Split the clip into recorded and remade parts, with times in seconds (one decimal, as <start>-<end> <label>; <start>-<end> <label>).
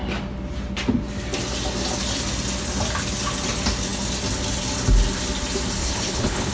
0.0-5.8 recorded; 5.8-6.5 remade